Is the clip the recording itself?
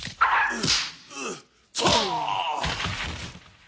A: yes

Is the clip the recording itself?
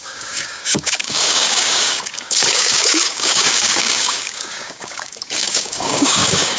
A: no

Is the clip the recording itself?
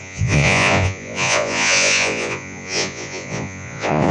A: no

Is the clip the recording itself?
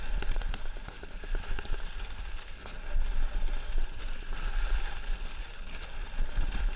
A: yes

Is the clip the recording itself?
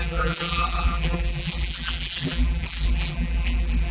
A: no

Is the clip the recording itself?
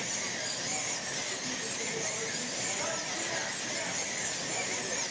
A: yes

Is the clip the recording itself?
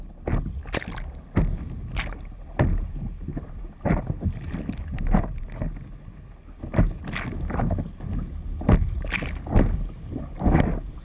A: yes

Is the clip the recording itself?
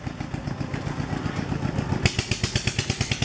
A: yes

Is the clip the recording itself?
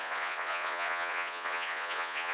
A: no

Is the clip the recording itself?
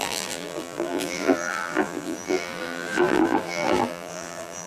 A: no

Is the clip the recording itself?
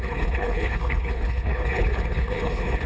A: no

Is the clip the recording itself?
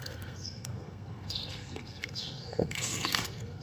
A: no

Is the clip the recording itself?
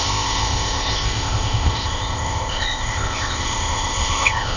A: no